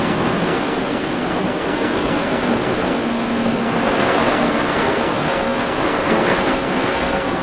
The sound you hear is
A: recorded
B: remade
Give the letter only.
B